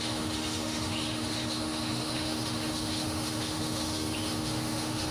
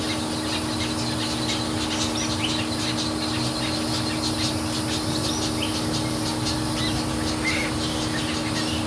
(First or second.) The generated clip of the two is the first